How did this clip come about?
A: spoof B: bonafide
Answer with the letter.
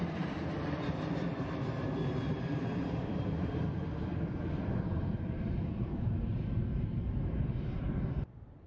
A